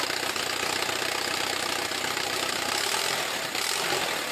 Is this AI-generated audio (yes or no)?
no